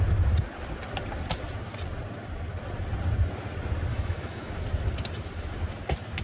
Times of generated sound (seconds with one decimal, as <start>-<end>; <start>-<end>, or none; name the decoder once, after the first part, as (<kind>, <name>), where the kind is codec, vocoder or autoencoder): 3.9-4.5 (autoencoder, DAC-VAE)